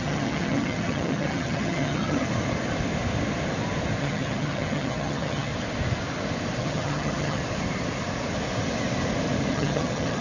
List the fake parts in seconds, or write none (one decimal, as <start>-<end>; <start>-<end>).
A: 0.0-2.3; 4.0-5.5; 6.6-7.4; 9.5-10.2